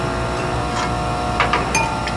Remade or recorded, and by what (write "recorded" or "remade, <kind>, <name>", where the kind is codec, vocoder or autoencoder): recorded